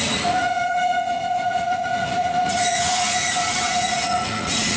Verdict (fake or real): fake